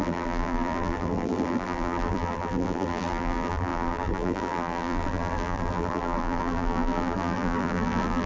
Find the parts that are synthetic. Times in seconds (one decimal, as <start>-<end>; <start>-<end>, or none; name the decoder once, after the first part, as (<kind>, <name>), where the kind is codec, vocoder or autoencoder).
0.0-8.3 (vocoder, BigVGAN v2)